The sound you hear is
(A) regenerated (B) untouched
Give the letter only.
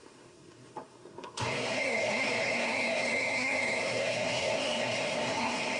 A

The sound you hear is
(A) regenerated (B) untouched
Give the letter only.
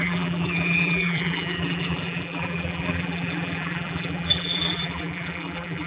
A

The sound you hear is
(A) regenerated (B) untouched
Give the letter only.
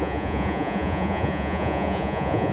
A